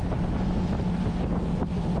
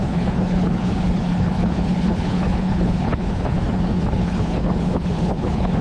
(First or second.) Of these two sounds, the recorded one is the first